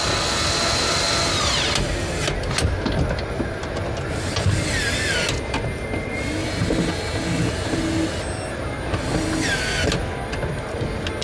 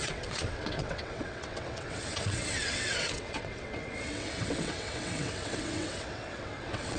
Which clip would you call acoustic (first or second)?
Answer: first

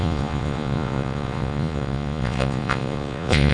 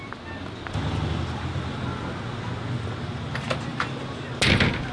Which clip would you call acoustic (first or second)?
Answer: second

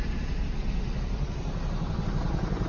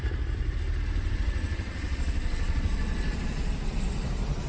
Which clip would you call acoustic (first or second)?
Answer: first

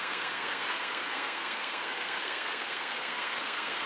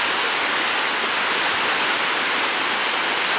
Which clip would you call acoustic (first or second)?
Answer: second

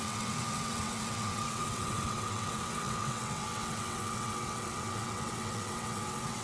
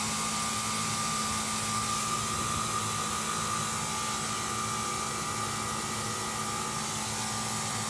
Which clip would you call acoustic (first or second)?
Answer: second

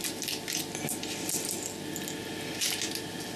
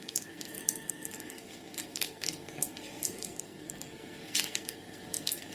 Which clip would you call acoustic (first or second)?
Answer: first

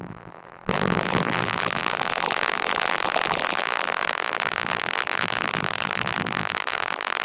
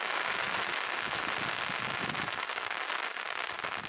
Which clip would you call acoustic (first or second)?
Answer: second